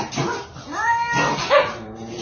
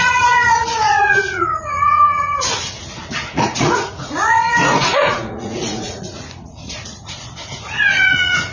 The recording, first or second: first